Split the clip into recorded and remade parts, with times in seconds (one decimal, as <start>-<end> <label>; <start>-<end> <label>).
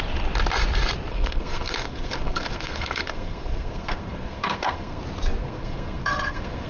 0.0-1.1 recorded; 1.1-5.0 remade; 5.0-5.4 recorded; 5.4-6.7 remade